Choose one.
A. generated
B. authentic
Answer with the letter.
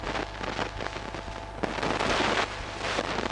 B